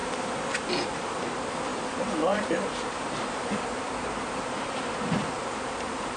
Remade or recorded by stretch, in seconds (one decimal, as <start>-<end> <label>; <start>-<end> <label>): 0.0-1.7 recorded; 1.7-5.4 remade; 5.4-6.2 recorded